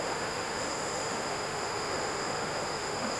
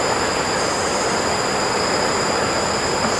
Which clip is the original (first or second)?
second